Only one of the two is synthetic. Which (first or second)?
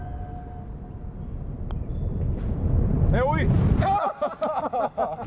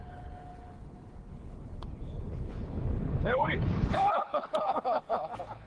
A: second